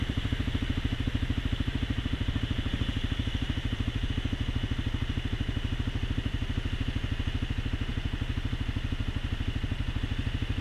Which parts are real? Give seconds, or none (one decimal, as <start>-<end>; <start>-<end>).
4.1-10.6